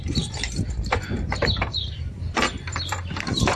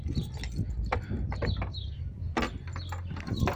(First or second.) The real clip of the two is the second